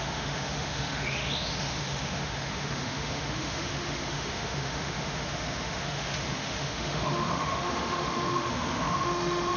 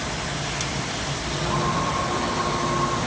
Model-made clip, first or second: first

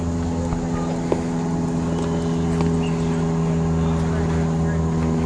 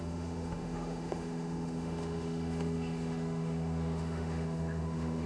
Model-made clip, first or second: second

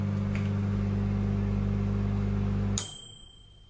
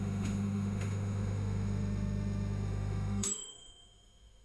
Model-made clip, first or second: second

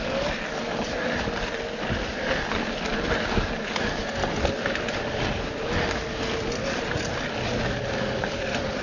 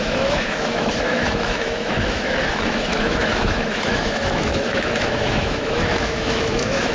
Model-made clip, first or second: second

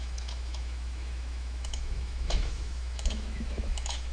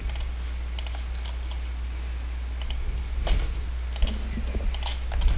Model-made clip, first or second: first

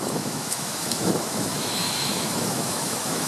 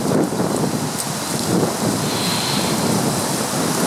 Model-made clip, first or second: first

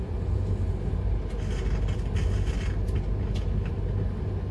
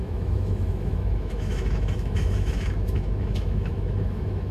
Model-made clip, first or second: second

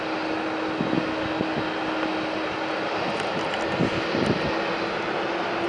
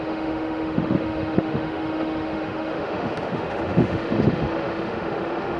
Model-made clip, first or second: second